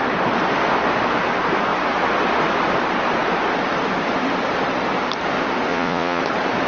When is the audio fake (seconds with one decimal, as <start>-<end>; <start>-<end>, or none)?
5.7-6.2